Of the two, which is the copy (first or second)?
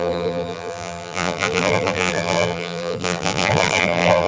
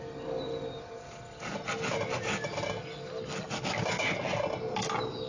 first